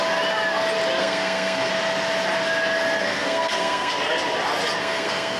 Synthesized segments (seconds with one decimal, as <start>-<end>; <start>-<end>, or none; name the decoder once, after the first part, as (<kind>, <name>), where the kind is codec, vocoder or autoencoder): 1.0-1.7 (codec, SNAC); 3.0-3.9; 4.8-5.4